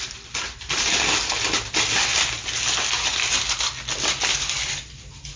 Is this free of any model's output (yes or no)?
yes